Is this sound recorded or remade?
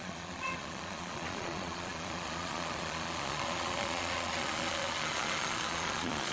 remade